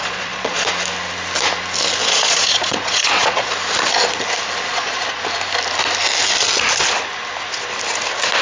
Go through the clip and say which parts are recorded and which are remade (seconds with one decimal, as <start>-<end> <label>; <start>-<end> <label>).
0.0-0.7 remade; 0.7-2.0 recorded; 2.0-3.5 remade; 3.5-4.7 recorded; 4.7-5.2 remade; 5.2-8.4 recorded